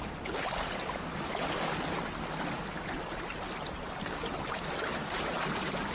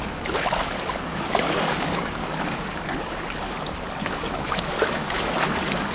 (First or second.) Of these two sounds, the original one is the first